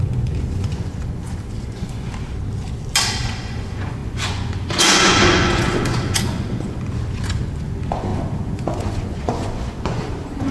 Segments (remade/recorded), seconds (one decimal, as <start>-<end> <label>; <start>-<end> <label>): 0.0-2.1 remade; 2.1-3.2 recorded; 3.2-10.5 remade